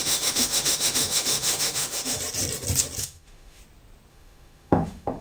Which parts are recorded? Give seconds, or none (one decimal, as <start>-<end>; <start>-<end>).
2.2-3.0; 3.6-4.1